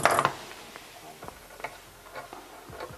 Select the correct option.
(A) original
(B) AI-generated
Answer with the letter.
A